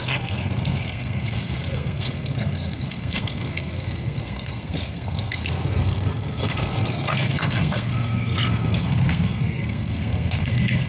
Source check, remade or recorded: remade